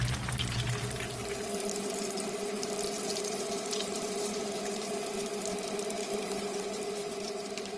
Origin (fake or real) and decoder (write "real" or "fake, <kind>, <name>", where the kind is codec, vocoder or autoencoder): fake, vocoder, BigVGAN v2